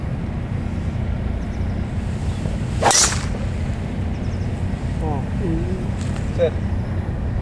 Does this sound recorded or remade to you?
recorded